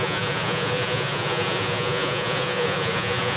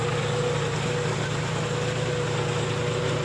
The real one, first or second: second